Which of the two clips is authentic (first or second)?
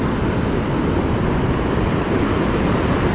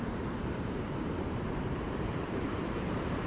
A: first